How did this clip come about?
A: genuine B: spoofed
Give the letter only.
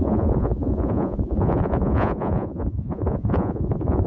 B